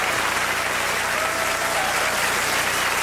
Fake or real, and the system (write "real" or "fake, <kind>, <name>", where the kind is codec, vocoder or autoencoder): real